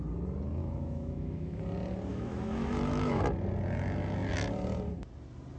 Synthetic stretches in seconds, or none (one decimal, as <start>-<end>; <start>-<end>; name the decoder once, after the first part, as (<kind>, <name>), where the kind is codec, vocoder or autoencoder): 0.6-1.6 (autoencoder, DAC-VAE); 2.1-3.2